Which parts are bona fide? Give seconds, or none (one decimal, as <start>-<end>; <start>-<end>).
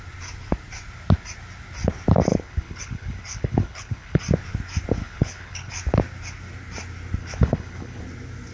0.0-2.3; 4.2-5.0; 5.7-7.2; 8.0-8.5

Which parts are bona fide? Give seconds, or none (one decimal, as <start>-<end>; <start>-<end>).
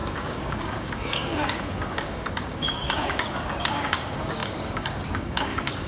none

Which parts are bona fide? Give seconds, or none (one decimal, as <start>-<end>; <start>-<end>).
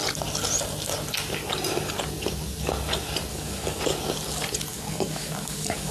0.0-3.3; 3.8-4.7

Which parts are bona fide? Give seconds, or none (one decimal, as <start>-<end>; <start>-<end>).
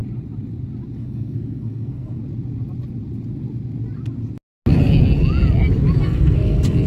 0.0-1.0; 2.2-6.0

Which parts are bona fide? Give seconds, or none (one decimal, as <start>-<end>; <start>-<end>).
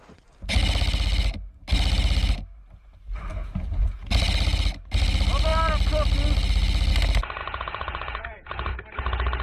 0.0-3.3; 4.1-7.4; 8.7-9.4